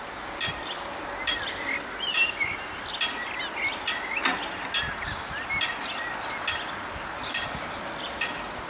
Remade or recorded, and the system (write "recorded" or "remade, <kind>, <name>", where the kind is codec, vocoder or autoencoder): recorded